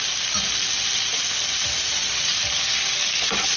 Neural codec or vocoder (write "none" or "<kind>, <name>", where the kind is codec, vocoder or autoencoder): none